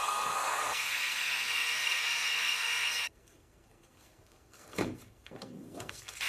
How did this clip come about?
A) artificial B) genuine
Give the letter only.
A